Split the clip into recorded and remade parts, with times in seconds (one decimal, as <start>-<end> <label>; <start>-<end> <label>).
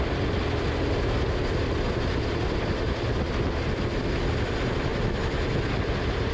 0.0-6.3 recorded